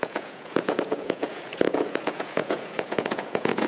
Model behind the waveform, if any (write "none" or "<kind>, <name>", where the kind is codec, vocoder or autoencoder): vocoder, Vocos